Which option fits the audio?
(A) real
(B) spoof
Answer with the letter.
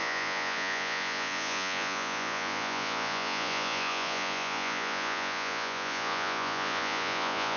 B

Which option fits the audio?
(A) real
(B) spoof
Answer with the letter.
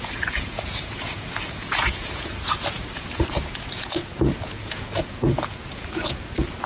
B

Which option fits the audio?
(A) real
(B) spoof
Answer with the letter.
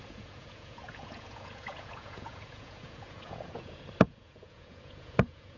B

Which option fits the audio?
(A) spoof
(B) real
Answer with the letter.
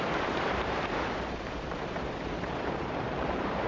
A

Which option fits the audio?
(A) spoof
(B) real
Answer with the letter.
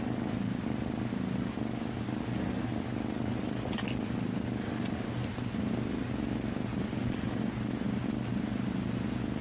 B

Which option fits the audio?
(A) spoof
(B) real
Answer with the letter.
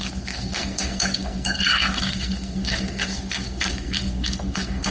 A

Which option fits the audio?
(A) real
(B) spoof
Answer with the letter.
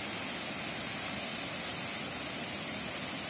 A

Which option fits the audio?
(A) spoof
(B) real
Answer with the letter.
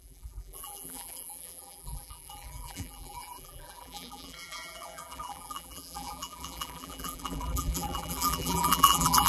A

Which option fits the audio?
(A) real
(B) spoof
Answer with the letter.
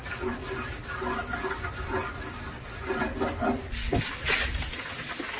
A